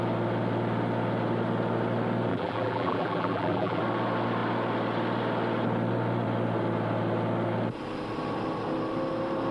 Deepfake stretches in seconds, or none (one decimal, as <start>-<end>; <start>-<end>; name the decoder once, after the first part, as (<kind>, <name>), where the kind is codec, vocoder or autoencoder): 2.3-3.8 (vocoder, BigVGAN v2)